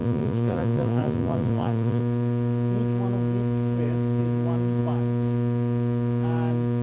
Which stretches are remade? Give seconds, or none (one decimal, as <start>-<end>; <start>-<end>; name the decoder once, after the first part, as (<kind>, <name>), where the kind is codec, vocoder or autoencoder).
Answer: 0.0-2.0 (vocoder, Vocos)